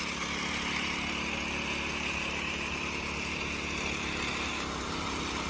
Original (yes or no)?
yes